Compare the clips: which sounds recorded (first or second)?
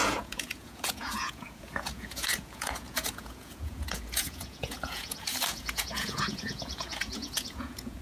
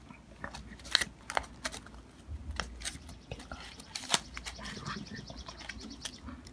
second